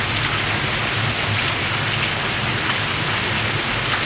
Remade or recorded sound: recorded